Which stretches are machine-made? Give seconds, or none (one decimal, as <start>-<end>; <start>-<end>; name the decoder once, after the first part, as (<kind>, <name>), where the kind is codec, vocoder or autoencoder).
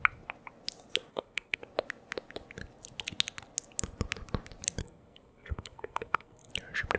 1.1-1.6 (codec, SNAC); 4.8-6.5